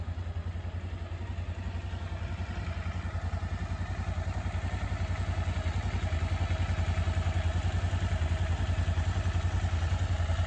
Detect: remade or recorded recorded